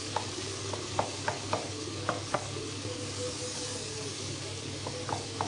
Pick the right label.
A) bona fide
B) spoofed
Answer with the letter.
B